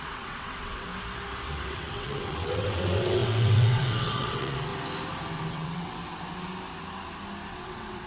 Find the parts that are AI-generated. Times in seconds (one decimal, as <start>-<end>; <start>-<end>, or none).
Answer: 0.0-0.9; 1.5-4.7; 5.5-6.0; 7.5-8.1